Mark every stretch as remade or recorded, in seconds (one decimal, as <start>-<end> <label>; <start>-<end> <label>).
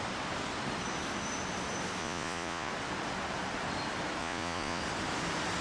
0.0-2.0 recorded; 2.0-2.7 remade; 2.7-4.2 recorded; 4.2-4.8 remade; 4.8-5.6 recorded